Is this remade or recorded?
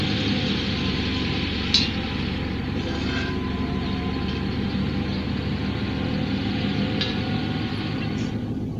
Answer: recorded